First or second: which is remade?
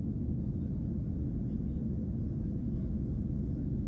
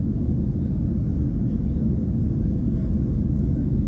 second